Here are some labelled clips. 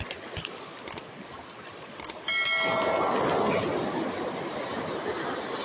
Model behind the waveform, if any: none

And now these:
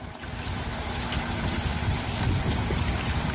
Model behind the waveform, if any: none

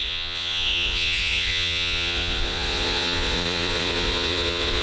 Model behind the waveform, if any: vocoder, Vocos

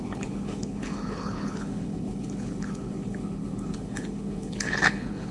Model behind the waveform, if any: codec, HILCodec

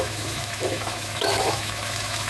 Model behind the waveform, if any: autoencoder, DAC-VAE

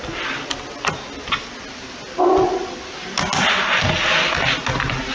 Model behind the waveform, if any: none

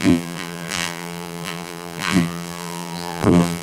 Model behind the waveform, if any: vocoder, BigVGAN v2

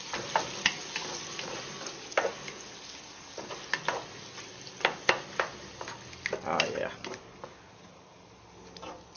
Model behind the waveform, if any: none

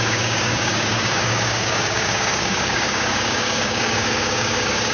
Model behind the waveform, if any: codec, DAC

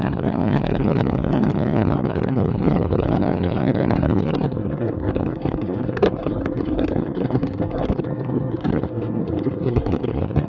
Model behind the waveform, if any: codec, SNAC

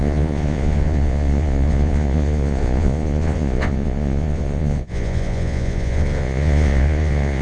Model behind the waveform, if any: vocoder, Vocos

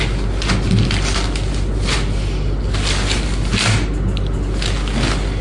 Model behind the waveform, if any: none